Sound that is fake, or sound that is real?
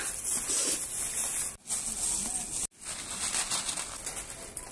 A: real